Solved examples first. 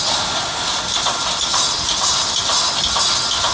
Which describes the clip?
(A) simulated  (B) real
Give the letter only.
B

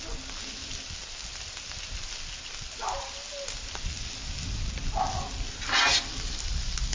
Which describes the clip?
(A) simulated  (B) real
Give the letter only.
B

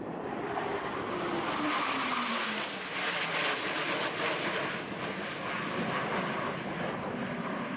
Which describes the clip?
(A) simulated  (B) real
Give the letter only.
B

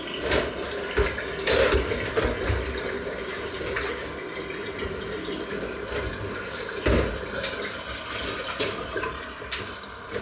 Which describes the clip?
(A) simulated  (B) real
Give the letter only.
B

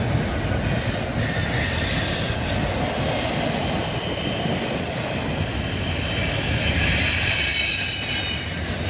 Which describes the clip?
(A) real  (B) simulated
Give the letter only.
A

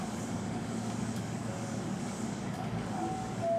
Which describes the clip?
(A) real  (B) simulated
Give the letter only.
B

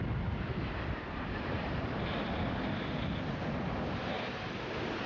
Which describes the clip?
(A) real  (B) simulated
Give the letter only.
A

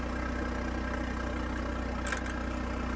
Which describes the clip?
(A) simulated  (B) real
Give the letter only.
B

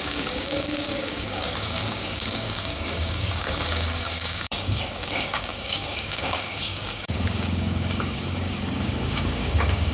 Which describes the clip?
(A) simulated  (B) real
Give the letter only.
A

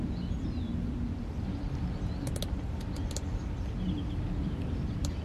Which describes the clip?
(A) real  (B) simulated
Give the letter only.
A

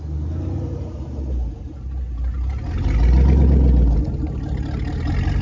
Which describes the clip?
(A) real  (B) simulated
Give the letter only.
A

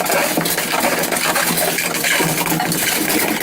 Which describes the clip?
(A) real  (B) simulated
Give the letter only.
A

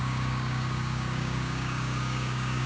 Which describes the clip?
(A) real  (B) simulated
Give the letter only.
B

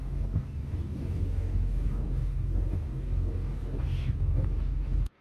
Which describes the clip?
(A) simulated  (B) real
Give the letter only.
A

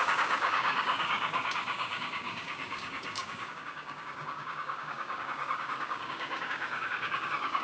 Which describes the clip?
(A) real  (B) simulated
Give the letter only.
B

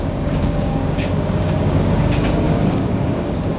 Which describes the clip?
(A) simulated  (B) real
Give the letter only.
A